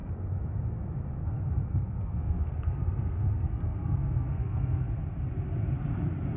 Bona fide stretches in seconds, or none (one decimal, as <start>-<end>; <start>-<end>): 0.0-1.2; 5.0-6.4